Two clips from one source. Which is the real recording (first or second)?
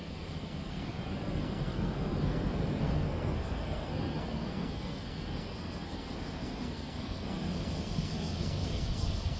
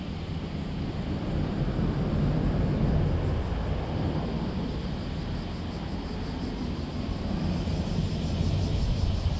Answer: second